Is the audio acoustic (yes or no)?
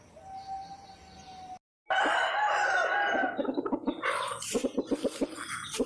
yes